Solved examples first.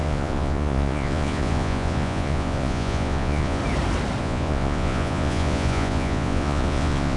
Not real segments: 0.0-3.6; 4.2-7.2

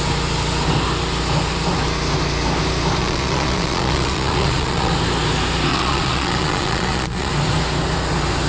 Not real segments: 3.0-4.9; 5.7-7.3

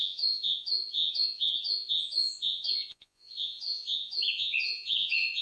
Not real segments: 0.0-5.4